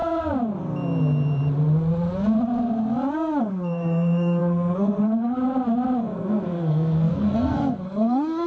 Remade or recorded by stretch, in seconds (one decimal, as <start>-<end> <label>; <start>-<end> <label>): 0.0-3.4 recorded; 3.4-5.4 remade; 5.4-6.0 recorded; 6.0-8.5 remade